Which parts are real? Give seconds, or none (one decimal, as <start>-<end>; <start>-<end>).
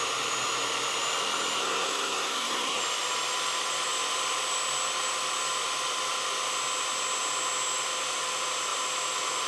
0.0-1.6; 2.8-9.5